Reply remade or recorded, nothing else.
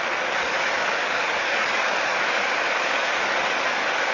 remade